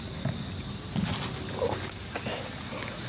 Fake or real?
real